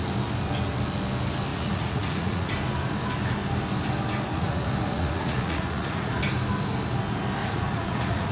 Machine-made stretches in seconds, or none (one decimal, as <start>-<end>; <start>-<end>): 1.5-2.5; 4.3-6.2; 7.4-8.3